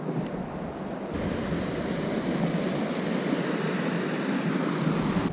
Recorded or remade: recorded